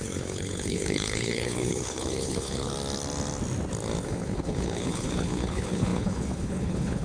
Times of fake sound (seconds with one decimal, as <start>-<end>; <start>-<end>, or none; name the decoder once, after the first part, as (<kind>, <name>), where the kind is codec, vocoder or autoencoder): 0.0-2.7 (codec, HILCodec); 4.0-7.0